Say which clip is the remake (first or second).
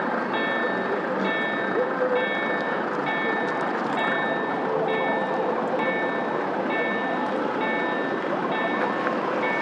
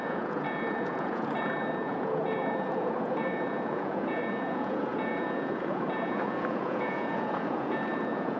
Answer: second